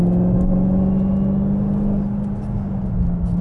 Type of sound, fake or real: real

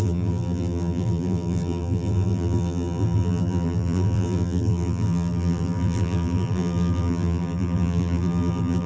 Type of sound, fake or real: fake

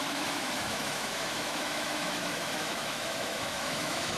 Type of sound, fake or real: fake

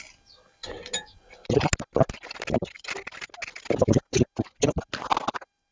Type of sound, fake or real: real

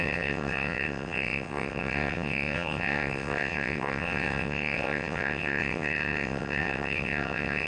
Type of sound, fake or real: fake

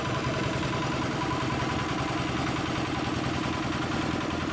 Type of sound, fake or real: real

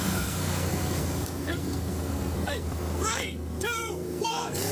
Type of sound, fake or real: fake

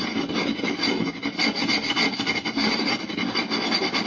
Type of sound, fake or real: real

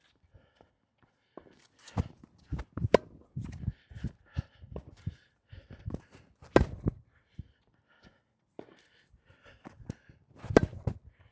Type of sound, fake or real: real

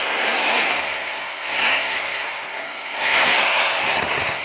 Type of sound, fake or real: fake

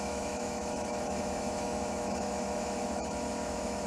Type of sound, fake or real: fake